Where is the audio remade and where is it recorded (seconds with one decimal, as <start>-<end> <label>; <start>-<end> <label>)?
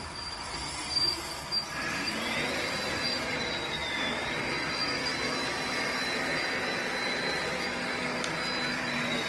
0.0-0.8 remade; 0.8-1.4 recorded; 1.4-5.1 remade; 5.1-5.7 recorded; 5.7-7.5 remade; 7.5-8.7 recorded; 8.7-9.3 remade